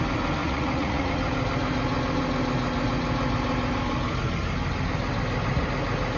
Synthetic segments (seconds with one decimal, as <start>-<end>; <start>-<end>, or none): 0.4-1.1